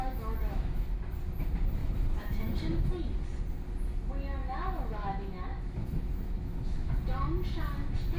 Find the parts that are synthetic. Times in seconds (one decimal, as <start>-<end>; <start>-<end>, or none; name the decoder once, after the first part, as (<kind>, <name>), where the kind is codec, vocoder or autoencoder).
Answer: 0.4-1.0 (autoencoder, DAC-VAE); 1.8-2.9; 4.4-6.9